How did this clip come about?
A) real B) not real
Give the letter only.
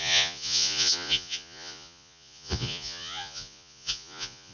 B